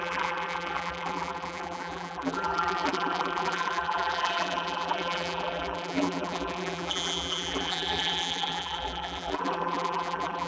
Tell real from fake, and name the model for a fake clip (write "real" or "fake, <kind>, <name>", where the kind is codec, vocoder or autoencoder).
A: fake, vocoder, BigVGAN v2